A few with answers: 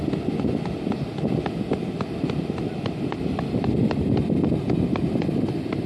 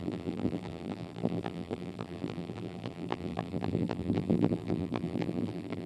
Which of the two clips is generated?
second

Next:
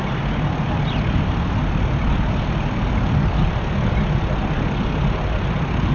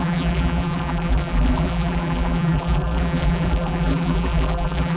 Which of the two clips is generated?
second